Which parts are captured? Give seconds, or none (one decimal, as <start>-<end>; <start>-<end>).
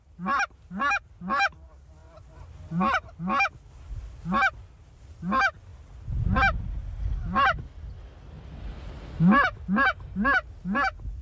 0.0-11.2